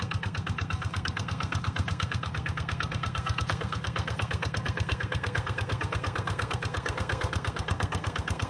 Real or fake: fake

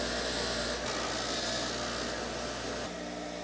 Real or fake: real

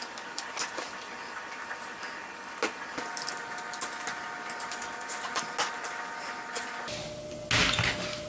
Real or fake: real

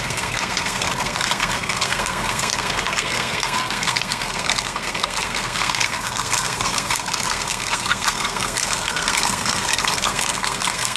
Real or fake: fake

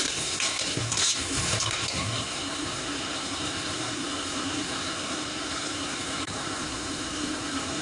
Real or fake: fake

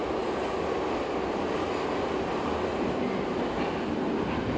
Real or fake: real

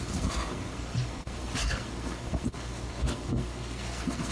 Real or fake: fake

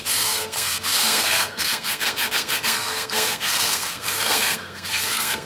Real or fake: fake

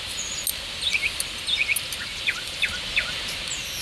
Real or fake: real